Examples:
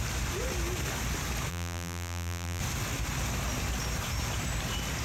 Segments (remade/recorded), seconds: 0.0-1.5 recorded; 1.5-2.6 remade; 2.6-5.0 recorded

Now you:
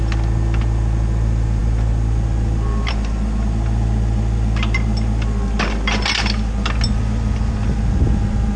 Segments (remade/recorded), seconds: 0.0-8.6 recorded

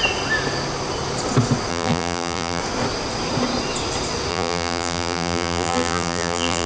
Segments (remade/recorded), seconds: 0.0-1.7 recorded; 1.7-2.6 remade; 2.6-4.3 recorded; 4.3-6.7 remade

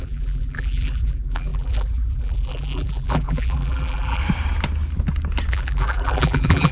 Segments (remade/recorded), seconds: 0.0-4.2 remade; 4.2-5.5 recorded; 5.5-6.7 remade

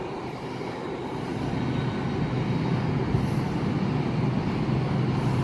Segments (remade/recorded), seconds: 0.0-1.3 remade; 1.3-4.5 recorded; 4.5-5.4 remade

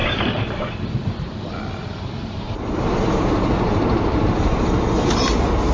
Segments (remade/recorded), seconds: 0.0-1.1 remade; 1.1-2.2 recorded; 2.2-4.6 remade; 4.6-5.7 recorded

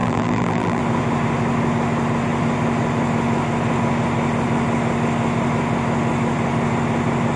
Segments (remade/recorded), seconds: 0.0-0.8 remade; 0.8-7.4 recorded

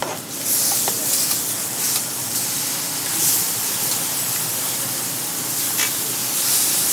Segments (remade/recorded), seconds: 0.0-6.2 recorded; 6.2-6.9 remade